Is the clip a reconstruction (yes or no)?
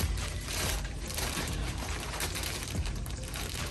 yes